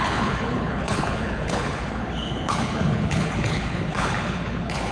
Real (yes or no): no